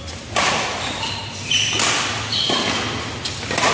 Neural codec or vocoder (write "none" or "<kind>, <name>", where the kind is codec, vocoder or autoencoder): none